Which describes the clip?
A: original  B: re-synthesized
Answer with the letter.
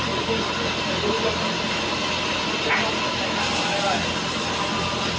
A